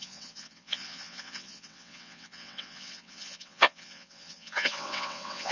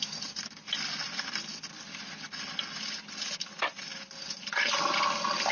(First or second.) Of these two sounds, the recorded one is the second